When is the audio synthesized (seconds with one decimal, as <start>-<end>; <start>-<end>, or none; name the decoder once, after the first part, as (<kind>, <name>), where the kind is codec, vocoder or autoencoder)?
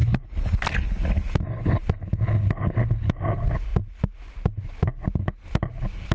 none